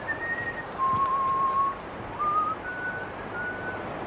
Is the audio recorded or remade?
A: recorded